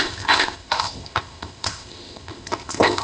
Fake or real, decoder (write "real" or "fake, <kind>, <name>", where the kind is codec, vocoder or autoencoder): fake, codec, ZipCodec